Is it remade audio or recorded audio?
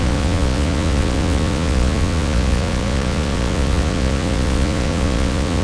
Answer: remade